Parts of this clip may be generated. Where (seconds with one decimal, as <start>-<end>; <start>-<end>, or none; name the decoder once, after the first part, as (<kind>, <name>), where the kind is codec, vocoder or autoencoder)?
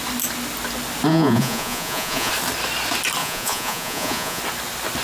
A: 1.1-2.3 (vocoder, Vocos); 3.2-4.4